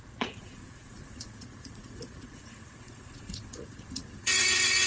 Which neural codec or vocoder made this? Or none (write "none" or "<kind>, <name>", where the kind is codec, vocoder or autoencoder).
vocoder, Vocos